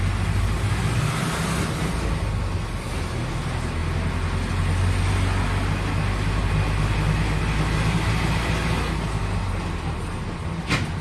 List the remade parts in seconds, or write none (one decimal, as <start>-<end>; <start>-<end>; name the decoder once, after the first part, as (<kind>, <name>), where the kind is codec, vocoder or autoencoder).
none